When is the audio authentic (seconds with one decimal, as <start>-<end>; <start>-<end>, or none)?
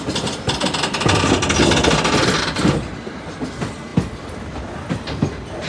0.0-5.7